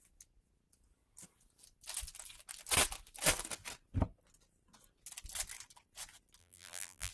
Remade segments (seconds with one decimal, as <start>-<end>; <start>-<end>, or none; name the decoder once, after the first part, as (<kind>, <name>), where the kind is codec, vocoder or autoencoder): 6.4-7.1 (vocoder, BigVGAN v2)